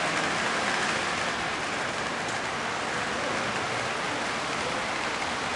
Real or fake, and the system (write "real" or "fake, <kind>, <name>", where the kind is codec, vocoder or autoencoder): real